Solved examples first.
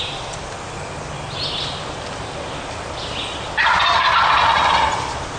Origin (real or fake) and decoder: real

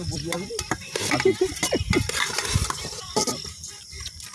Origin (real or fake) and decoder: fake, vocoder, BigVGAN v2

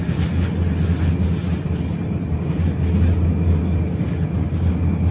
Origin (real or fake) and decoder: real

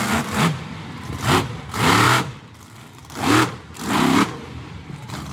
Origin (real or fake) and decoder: fake, vocoder, BigVGAN v2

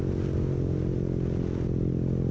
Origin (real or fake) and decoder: real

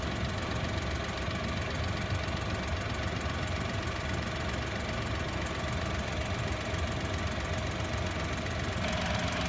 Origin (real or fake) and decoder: real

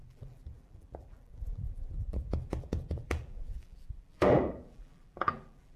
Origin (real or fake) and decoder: fake, vocoder, BigVGAN v2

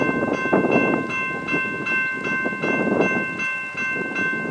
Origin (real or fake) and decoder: real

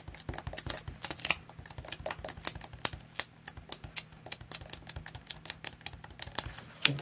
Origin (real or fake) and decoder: real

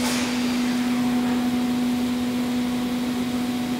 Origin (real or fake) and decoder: real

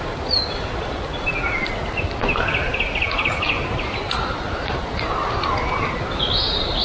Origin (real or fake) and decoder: real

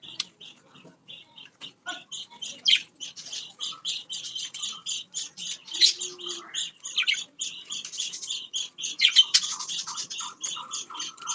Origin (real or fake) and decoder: fake, vocoder, BigVGAN v2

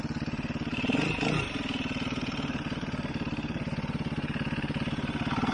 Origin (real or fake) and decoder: fake, vocoder, BigVGAN v2